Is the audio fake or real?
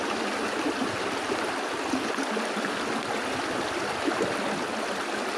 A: real